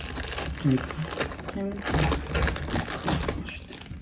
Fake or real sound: real